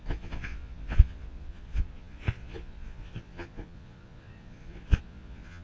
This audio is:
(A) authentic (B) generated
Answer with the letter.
B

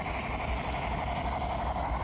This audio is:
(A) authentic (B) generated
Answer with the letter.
A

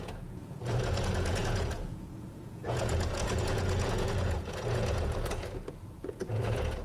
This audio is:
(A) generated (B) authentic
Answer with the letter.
A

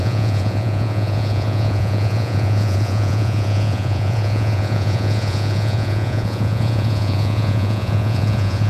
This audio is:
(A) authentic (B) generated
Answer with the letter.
B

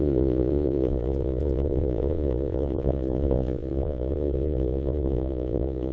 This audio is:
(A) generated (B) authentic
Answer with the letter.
A